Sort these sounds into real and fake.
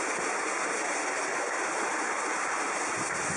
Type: real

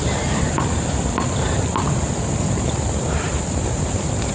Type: real